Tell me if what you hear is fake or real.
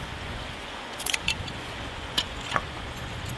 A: fake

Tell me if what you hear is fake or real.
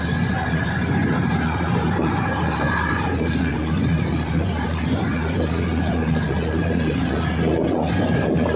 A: fake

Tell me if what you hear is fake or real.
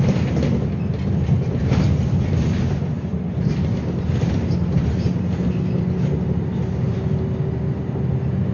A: real